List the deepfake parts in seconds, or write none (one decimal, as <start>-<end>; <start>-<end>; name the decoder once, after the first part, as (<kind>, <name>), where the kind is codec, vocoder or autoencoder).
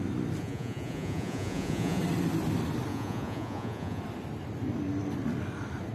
0.4-2.0 (vocoder, Vocos); 2.9-4.0